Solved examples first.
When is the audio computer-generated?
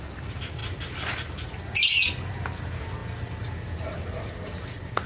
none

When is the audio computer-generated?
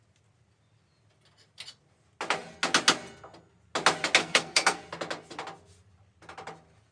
4.2-4.8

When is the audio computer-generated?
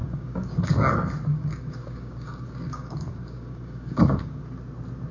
0.0-0.9; 1.3-4.4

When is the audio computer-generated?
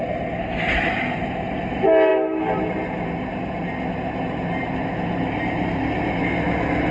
none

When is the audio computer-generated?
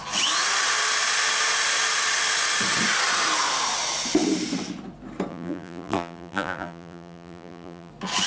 5.3-7.9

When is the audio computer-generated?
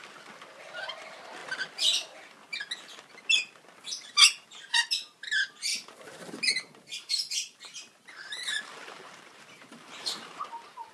5.7-10.4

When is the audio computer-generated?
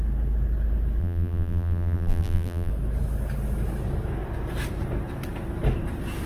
1.0-2.7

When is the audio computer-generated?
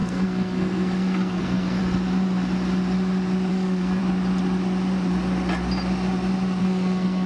0.0-1.8; 3.5-4.0; 6.6-7.3